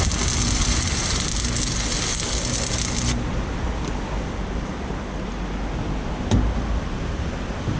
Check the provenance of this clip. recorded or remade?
recorded